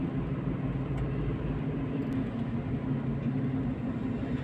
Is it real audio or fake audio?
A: real